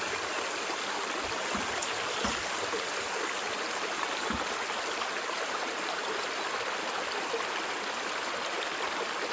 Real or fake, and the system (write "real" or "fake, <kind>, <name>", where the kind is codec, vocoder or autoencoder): real